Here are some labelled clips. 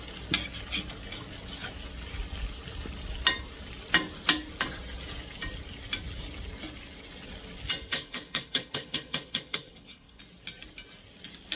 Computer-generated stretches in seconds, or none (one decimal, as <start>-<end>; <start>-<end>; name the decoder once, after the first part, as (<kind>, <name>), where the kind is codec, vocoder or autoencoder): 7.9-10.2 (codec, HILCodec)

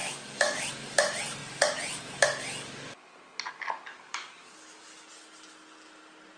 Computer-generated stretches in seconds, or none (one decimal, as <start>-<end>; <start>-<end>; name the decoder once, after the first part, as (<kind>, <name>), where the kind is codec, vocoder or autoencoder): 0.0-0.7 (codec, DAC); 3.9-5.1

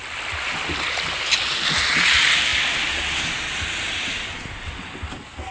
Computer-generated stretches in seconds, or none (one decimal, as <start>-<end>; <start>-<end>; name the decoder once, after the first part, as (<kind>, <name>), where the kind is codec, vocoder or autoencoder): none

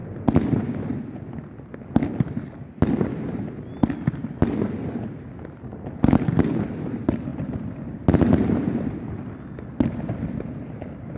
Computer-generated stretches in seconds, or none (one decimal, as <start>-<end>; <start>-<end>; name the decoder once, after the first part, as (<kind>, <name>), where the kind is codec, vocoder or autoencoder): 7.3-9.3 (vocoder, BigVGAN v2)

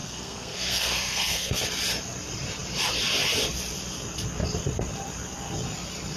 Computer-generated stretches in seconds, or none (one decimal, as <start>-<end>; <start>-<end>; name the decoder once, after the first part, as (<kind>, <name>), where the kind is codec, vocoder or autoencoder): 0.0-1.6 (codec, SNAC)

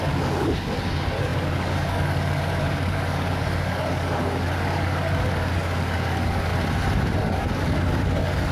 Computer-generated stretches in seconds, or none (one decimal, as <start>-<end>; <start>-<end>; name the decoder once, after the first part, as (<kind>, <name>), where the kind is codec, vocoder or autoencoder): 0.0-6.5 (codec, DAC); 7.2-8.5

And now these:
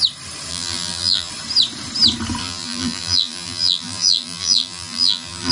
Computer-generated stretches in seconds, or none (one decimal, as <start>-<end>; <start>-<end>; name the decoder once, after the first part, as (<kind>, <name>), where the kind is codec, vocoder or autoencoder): 0.5-1.3 (vocoder, BigVGAN v2); 2.4-5.5